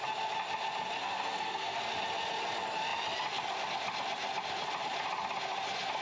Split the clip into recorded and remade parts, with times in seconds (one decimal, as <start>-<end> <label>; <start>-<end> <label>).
0.0-1.0 recorded; 1.0-1.8 remade; 1.8-6.0 recorded